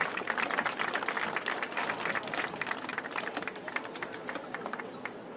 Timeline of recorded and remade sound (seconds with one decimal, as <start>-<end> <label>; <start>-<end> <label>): 0.0-2.9 recorded; 2.9-4.8 remade; 4.8-5.4 recorded